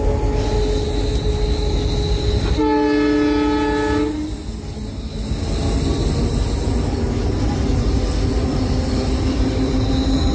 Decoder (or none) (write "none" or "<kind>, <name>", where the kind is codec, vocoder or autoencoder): none